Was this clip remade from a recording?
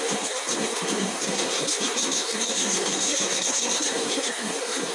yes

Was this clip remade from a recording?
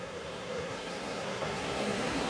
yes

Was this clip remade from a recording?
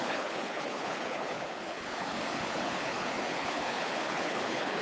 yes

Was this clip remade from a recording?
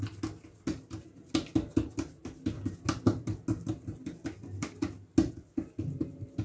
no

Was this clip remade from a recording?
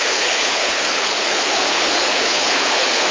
yes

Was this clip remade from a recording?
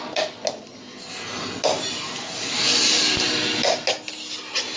no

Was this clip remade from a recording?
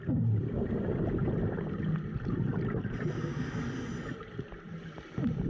no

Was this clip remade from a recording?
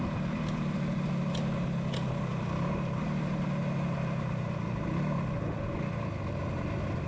no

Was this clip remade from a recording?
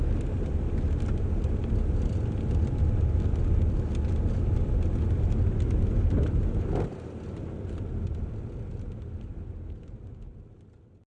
no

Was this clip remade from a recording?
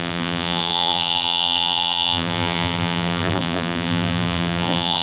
yes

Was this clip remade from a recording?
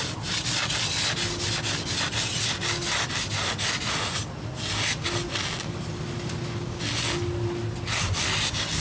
no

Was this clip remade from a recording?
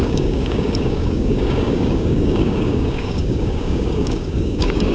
yes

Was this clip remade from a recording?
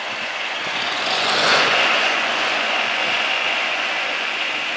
yes